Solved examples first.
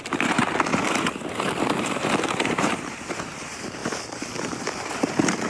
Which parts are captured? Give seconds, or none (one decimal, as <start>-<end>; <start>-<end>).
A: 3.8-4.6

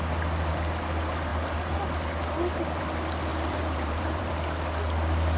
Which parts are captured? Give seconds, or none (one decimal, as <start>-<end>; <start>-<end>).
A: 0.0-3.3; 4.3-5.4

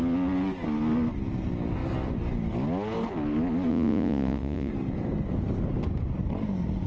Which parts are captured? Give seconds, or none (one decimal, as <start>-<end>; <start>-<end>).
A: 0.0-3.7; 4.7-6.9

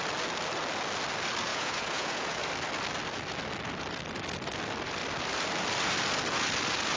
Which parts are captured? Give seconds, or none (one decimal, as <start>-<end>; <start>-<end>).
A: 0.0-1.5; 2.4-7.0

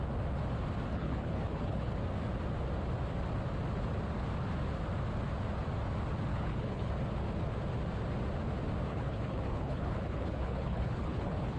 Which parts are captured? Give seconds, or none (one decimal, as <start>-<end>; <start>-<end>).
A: 0.0-0.9; 1.9-6.3; 6.9-8.9

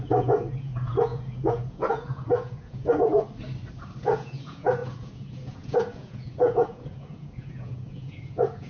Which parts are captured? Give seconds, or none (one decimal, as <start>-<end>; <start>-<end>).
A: 3.1-4.0

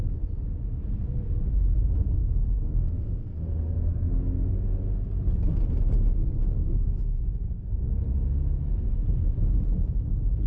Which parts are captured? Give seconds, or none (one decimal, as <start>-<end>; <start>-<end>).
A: 0.0-1.7; 4.5-6.6; 7.8-10.5

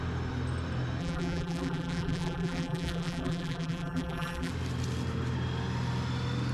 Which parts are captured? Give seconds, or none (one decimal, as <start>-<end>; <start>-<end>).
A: 0.0-1.0; 4.5-6.5